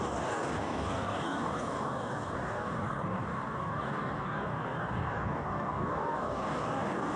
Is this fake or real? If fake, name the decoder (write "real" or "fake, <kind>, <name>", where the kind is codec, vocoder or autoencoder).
fake, codec, DAC